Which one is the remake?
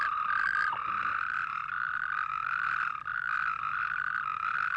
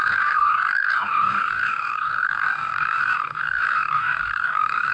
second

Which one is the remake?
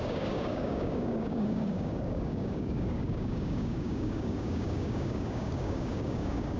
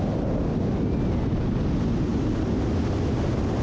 first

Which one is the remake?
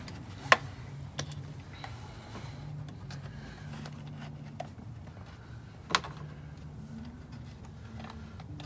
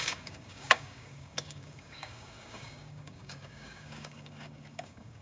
second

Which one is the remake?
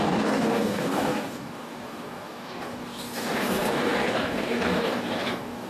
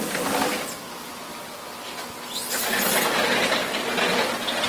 first